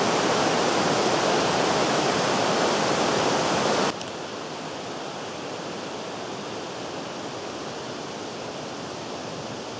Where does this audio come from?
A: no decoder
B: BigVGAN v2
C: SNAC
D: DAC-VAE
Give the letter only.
A